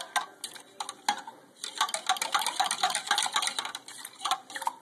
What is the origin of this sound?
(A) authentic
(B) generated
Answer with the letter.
A